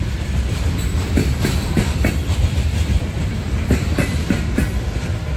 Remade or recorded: remade